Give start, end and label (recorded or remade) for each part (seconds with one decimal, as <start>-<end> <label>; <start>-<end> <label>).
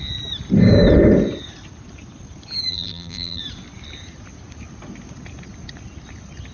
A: 0.0-2.7 recorded; 2.7-3.4 remade; 3.4-6.5 recorded